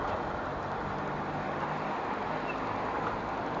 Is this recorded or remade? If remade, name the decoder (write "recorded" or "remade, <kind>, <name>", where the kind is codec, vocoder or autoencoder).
recorded